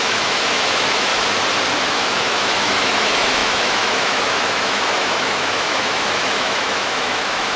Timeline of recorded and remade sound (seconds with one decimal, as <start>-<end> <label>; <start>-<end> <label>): 0.0-1.1 remade; 1.1-1.7 recorded; 1.7-7.6 remade